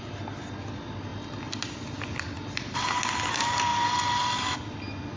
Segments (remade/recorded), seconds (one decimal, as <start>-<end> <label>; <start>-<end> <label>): 0.0-5.2 recorded